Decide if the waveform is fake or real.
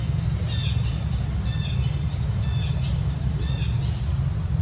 real